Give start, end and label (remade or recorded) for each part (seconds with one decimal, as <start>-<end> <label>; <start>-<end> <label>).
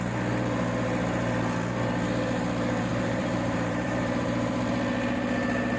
0.0-2.9 recorded; 2.9-4.6 remade; 4.6-5.8 recorded